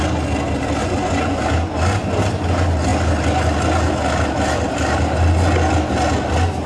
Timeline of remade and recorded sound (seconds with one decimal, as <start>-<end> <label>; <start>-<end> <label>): 0.0-0.8 recorded; 0.8-1.4 remade; 1.4-6.7 recorded